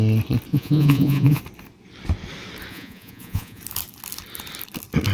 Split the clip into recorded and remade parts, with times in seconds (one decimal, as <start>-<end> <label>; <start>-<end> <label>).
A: 0.0-0.5 recorded; 0.5-1.4 remade; 1.4-2.7 recorded; 2.7-3.6 remade; 3.6-5.1 recorded